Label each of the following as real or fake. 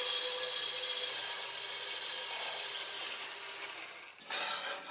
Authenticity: real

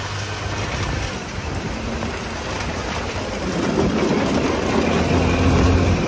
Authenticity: real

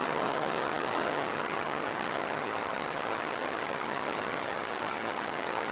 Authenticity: fake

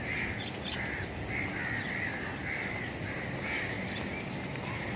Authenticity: real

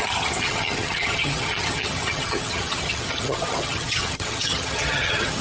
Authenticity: fake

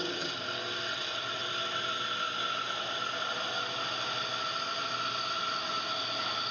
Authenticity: real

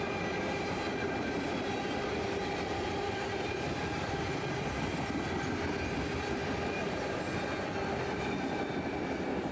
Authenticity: real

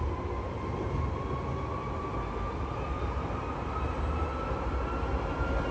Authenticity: real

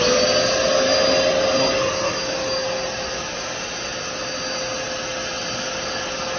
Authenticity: real